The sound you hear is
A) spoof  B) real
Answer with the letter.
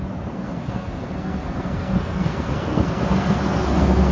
A